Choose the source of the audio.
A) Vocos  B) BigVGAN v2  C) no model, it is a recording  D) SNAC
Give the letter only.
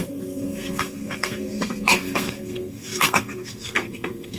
D